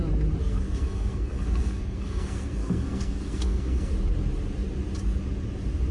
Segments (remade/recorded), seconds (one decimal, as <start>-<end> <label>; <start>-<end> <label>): 0.0-0.4 recorded; 0.4-3.9 remade; 3.9-5.9 recorded